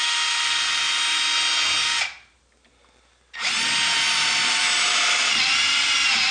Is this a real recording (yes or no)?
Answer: yes